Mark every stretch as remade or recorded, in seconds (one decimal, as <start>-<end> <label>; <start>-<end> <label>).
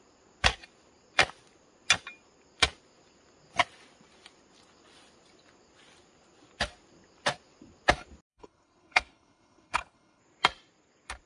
0.0-8.3 recorded; 8.3-10.2 remade; 10.2-11.3 recorded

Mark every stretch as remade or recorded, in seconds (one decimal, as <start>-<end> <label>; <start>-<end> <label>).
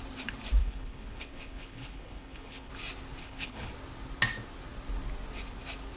0.0-0.6 recorded; 0.6-2.7 remade; 2.7-3.2 recorded; 3.2-3.7 remade; 3.7-6.0 recorded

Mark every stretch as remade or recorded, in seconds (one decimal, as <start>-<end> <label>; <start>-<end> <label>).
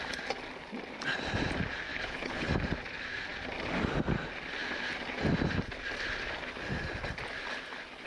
0.0-1.9 recorded; 1.9-2.5 remade; 2.5-8.1 recorded